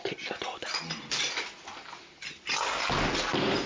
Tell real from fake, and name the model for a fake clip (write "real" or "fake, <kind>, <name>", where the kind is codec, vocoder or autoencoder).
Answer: real